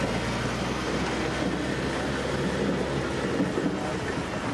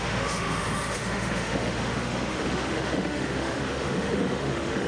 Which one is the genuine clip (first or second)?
first